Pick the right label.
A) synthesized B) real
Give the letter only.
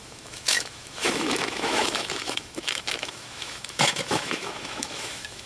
A